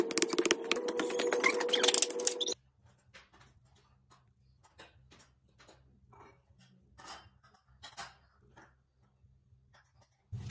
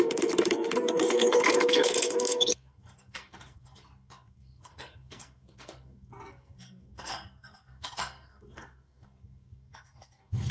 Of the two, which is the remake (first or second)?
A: second